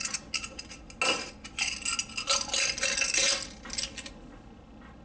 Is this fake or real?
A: real